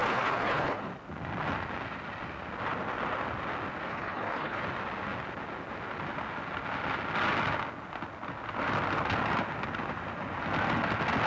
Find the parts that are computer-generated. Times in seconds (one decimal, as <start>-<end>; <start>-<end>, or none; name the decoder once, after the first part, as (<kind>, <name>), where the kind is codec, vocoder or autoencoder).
0.0-0.8 (codec, HILCodec); 3.9-4.6